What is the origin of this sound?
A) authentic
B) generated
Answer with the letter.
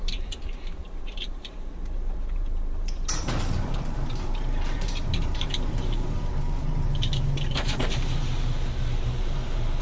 B